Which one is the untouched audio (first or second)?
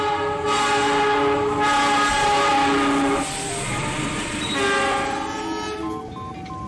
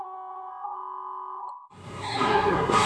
first